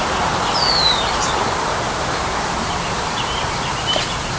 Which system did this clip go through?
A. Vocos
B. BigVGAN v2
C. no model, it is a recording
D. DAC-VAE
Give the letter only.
B